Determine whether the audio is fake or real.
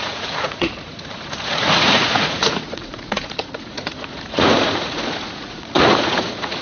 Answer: fake